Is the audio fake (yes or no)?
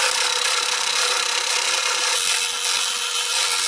no